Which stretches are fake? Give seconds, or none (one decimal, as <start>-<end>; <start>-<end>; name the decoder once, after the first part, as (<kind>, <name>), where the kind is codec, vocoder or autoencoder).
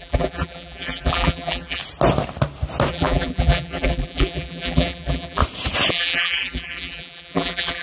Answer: 0.0-1.8 (vocoder, BigVGAN v2); 2.9-5.4; 5.9-7.8